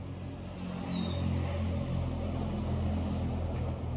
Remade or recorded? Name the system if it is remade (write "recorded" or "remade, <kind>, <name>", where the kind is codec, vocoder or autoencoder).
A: recorded